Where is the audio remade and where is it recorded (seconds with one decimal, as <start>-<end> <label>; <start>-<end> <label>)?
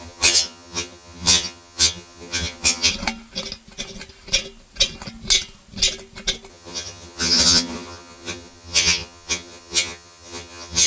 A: 0.0-2.9 remade; 2.9-6.5 recorded; 6.5-10.9 remade